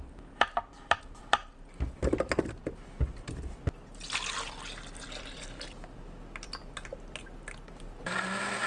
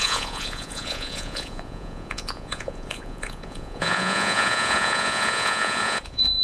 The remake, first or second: second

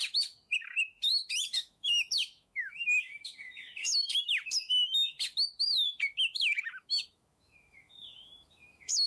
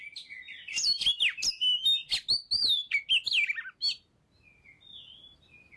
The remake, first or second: first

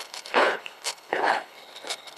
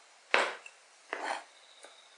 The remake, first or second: first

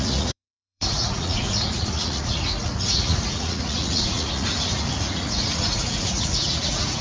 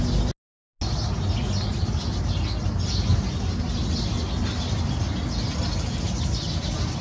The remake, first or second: first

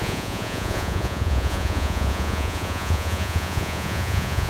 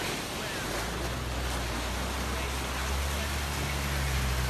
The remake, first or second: first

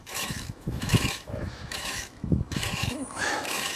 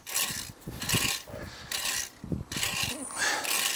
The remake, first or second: first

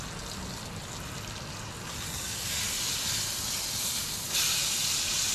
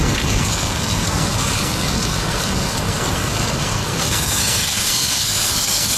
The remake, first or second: second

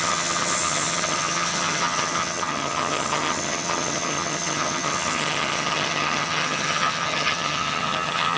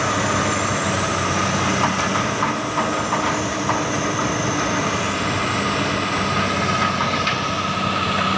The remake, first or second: first